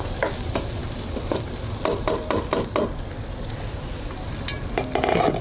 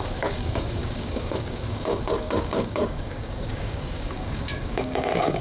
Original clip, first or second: first